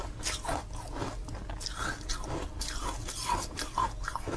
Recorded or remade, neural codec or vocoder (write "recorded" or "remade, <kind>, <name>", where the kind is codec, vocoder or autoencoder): recorded